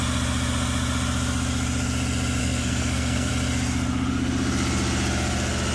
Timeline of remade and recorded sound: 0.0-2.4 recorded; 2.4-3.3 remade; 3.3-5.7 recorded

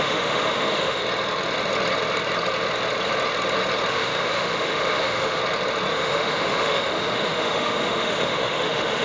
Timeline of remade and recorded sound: 0.0-1.0 remade; 1.0-3.9 recorded; 3.9-5.4 remade; 5.4-5.9 recorded; 5.9-9.0 remade

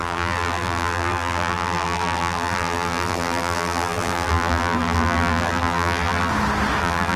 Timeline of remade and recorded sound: 0.0-6.3 remade; 6.3-6.8 recorded; 6.8-7.2 remade